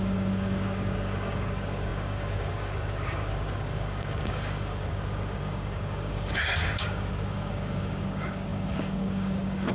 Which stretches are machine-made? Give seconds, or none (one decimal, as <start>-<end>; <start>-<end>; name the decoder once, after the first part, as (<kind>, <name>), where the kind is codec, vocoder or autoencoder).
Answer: 0.0-9.7 (codec, DAC)